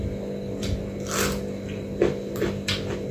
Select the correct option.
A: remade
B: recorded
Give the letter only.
B